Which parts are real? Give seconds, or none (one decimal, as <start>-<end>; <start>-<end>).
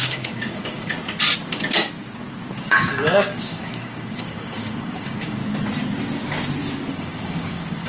1.0-2.6; 5.4-6.9